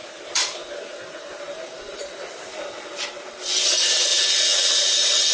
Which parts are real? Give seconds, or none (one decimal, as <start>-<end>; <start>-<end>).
2.0-3.0; 4.1-4.8